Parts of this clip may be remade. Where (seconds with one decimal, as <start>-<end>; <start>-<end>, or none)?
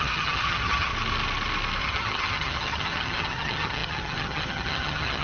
0.0-0.9; 1.8-5.2